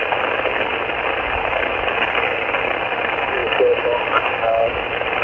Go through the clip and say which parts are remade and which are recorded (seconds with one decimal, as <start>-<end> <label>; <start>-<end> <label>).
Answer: 0.0-5.2 recorded